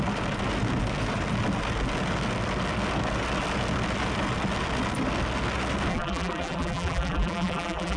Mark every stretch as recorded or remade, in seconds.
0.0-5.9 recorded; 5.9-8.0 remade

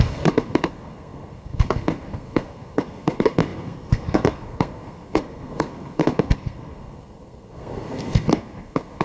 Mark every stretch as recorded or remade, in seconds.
0.0-9.0 remade

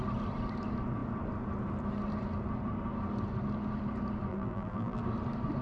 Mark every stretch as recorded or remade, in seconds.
0.0-4.3 recorded; 4.3-5.0 remade; 5.0-5.6 recorded

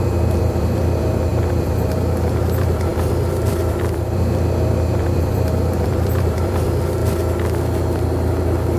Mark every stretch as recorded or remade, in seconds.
0.0-7.0 remade; 7.0-8.8 recorded

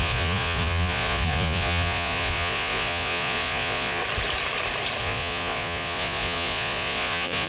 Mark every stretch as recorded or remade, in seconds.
0.0-4.0 remade; 4.0-5.0 recorded; 5.0-7.5 remade

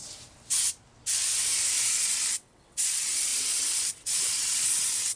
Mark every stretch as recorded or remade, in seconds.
0.0-1.9 recorded; 1.9-5.2 remade